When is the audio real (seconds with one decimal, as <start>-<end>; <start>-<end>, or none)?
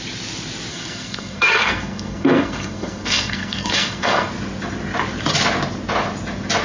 0.0-0.7; 4.3-6.6